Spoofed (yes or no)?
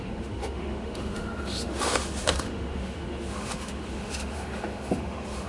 yes